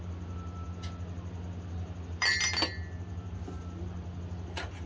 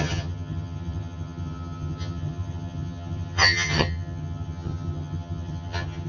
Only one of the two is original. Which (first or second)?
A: first